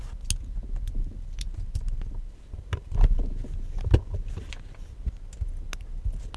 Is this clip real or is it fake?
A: real